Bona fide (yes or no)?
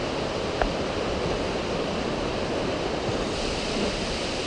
yes